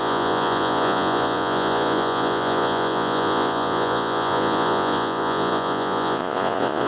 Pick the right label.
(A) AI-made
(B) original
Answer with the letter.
A